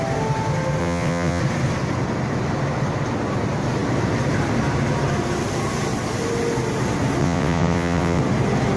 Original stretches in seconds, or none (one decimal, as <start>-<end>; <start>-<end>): 0.0-0.8; 1.4-7.2; 8.2-8.8